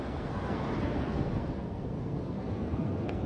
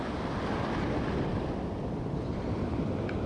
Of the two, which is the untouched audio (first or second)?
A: second